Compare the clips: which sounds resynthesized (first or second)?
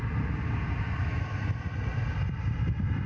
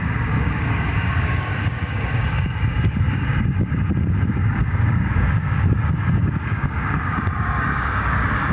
second